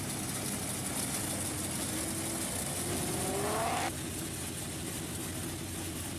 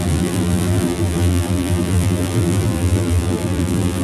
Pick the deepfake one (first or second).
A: second